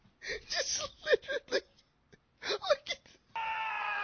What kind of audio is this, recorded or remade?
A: recorded